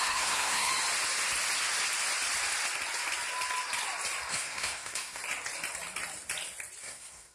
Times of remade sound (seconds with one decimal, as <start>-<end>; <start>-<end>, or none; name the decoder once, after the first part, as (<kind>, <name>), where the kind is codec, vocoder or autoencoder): 0.0-0.7 (codec, SNAC); 4.3-5.2; 6.8-7.3